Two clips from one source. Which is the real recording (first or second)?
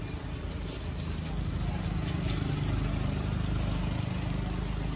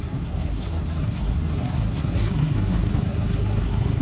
first